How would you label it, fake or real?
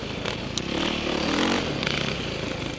real